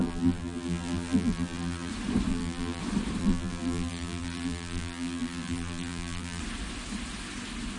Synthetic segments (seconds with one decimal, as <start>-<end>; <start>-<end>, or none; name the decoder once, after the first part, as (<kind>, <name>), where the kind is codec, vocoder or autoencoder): 0.0-1.9 (vocoder, BigVGAN v2); 2.3-2.8; 3.2-6.4